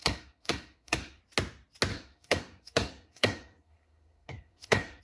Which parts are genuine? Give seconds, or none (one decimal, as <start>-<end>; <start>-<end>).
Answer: 1.2-1.9

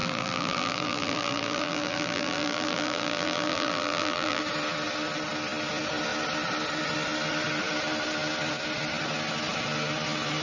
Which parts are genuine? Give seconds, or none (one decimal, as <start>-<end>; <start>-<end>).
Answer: 4.4-10.4

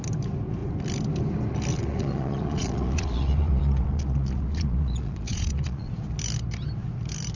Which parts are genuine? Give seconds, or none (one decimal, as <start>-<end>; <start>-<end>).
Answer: 0.0-1.7; 5.9-7.4

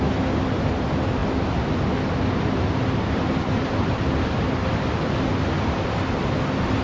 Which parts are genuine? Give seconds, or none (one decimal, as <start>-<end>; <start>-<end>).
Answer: 0.0-6.8

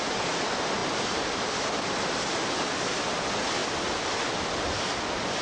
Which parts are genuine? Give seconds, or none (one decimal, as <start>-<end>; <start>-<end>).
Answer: 0.0-5.4

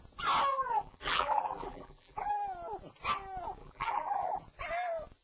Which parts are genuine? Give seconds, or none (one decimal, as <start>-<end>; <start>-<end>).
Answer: 0.0-0.5; 2.3-3.6; 4.4-5.2